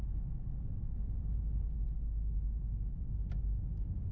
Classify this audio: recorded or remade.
recorded